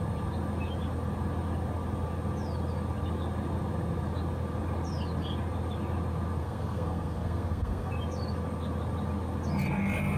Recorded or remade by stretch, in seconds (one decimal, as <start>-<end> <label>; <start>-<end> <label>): 0.0-6.4 recorded; 6.4-7.9 remade; 7.9-10.2 recorded